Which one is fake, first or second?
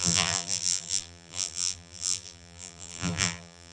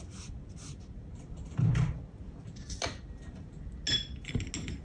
first